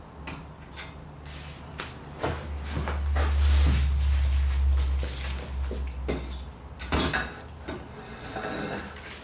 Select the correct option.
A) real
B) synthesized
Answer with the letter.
A